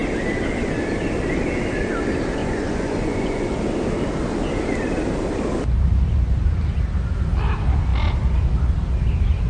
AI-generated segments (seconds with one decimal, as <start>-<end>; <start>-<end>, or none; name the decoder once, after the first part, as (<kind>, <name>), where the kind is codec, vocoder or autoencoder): 2.4-3.5 (vocoder, Vocos)